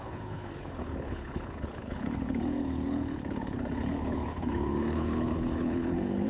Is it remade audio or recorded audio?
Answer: remade